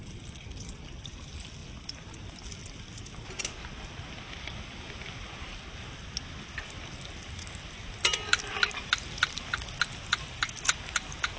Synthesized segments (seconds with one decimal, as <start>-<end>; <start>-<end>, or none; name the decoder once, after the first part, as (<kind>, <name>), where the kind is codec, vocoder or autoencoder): none